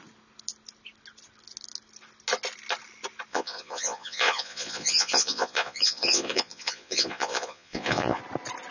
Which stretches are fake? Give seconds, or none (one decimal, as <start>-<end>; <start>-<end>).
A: 3.3-8.2